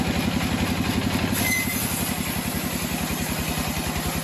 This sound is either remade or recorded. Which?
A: recorded